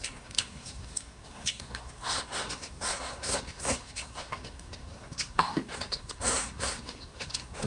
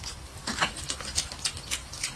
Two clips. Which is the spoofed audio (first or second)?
first